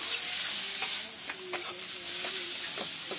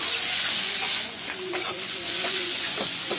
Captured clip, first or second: first